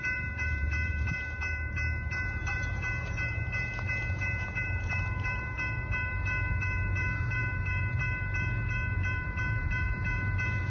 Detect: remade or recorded remade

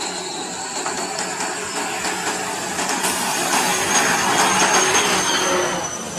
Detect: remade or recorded recorded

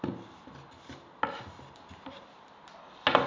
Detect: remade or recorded recorded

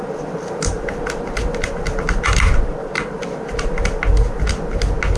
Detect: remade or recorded recorded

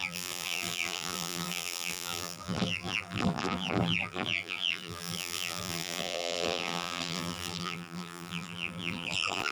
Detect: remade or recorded remade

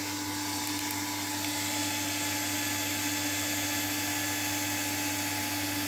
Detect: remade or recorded recorded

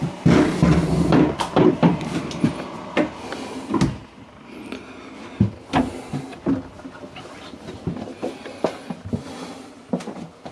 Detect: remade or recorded recorded